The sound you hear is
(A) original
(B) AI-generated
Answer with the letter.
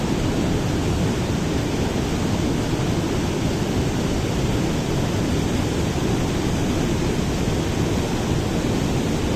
A